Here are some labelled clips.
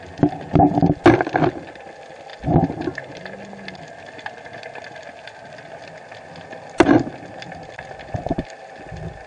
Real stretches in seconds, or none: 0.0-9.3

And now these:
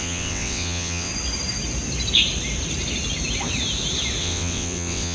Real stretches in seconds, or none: 1.1-4.2

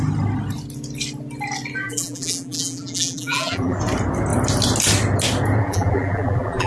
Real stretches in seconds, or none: 0.0-1.8; 3.8-5.6

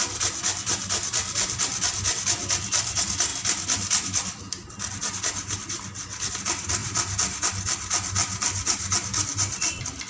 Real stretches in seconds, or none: 0.0-10.1

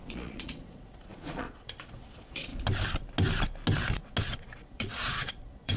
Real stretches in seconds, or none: 2.5-4.2

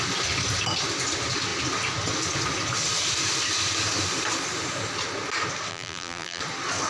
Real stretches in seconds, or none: 0.0-5.7; 6.4-6.9